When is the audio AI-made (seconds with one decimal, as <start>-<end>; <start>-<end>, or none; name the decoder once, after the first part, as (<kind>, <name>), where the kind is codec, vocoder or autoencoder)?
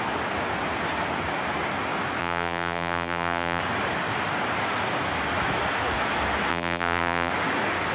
2.2-3.6 (vocoder, BigVGAN v2); 6.5-7.3